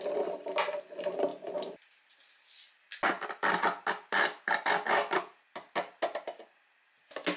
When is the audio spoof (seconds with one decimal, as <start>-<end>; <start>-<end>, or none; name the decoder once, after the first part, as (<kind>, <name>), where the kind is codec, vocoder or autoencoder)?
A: 1.3-5.7 (vocoder, BigVGAN v2)